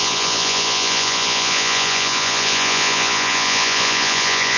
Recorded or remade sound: remade